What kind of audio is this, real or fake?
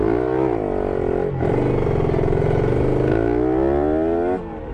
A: real